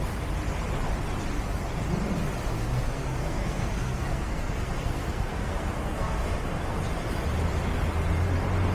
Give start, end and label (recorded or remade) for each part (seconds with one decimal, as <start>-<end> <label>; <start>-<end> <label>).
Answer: 0.0-2.5 recorded; 2.5-6.8 remade; 6.8-8.7 recorded